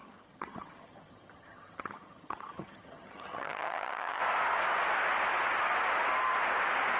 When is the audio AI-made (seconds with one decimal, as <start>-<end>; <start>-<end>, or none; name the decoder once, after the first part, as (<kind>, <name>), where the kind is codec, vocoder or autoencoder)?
0.0-4.2 (vocoder, HiFi-GAN)

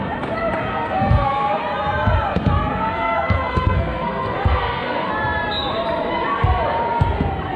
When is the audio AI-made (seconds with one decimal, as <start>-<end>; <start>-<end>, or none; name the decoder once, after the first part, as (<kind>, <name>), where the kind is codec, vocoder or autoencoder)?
0.7-1.6 (codec, SNAC); 2.7-5.1

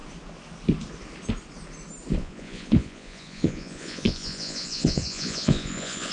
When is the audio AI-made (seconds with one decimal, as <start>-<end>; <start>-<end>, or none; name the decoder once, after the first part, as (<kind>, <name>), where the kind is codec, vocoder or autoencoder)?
2.2-6.1 (vocoder, Vocos)

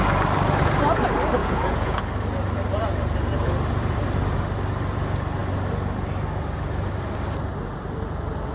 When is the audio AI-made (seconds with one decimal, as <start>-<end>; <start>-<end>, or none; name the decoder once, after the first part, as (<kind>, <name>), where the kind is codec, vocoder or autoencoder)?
1.4-2.0 (vocoder, Vocos)